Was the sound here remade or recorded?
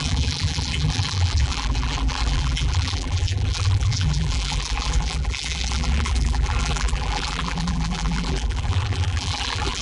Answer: remade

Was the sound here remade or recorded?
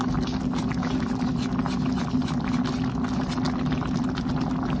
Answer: recorded